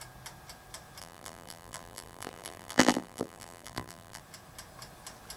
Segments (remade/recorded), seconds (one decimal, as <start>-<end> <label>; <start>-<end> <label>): 0.0-1.0 recorded; 1.0-4.2 remade; 4.2-5.4 recorded